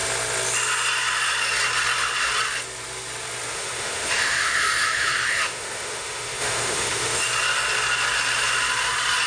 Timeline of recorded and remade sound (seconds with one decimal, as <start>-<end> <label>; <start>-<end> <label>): 0.0-3.5 recorded; 3.5-7.2 remade; 7.2-9.3 recorded